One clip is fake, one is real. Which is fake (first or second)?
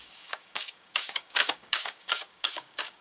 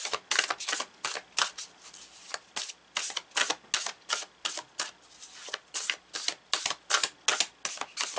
first